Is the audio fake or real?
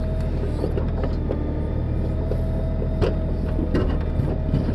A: real